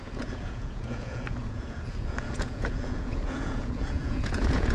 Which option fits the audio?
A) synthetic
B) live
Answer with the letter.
A